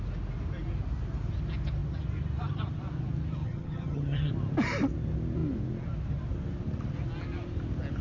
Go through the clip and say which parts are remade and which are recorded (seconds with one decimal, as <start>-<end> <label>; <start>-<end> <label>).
0.0-3.4 recorded; 3.4-4.3 remade; 4.3-8.0 recorded